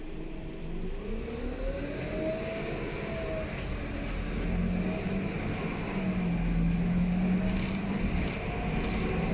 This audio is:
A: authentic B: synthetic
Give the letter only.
A